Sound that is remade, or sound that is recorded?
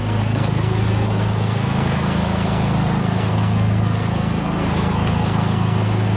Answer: remade